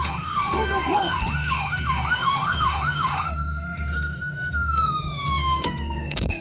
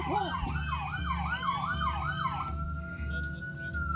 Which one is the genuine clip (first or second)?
second